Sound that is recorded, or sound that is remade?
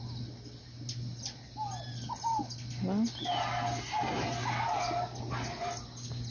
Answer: recorded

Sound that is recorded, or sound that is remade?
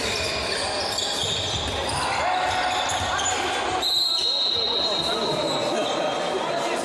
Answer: recorded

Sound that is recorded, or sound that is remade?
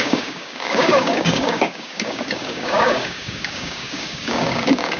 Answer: remade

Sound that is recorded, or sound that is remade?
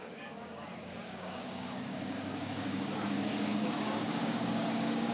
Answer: remade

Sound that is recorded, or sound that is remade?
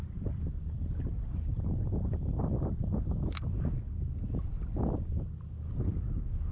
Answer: recorded